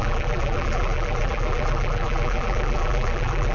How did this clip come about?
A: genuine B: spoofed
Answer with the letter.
B